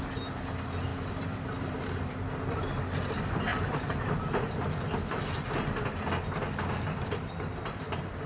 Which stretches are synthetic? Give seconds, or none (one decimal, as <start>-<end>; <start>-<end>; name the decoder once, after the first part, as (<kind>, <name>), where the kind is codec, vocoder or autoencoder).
none